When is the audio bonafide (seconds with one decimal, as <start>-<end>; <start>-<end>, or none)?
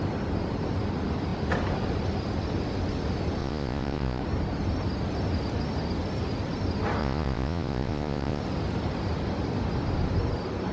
0.0-3.4; 4.2-7.0; 8.4-10.7